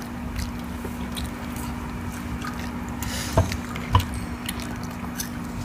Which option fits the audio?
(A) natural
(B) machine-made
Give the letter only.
A